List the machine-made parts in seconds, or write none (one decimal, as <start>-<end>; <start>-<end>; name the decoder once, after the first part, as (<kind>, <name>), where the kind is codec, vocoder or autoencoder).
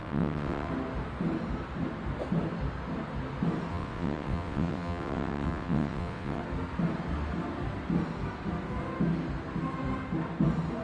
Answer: 0.0-0.7 (vocoder, WaveNeXt); 3.7-6.4